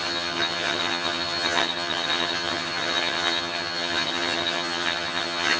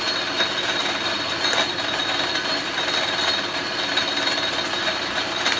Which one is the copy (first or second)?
first